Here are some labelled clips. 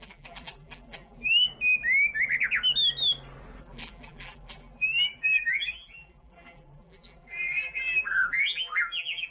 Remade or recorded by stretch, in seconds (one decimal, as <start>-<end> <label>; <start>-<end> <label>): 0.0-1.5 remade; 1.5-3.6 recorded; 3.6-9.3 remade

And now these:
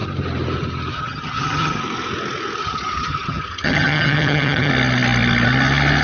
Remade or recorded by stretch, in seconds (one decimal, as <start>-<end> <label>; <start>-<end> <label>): 0.0-0.9 recorded; 0.9-1.8 remade; 1.8-2.6 recorded; 2.6-4.7 remade; 4.7-6.0 recorded

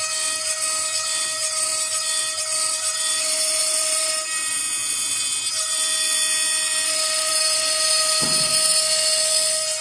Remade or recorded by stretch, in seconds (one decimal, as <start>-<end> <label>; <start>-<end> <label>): 0.0-3.6 recorded; 3.6-4.6 remade; 4.6-7.3 recorded; 7.3-8.5 remade; 8.5-9.8 recorded